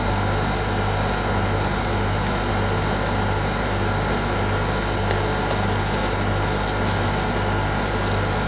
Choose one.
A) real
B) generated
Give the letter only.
A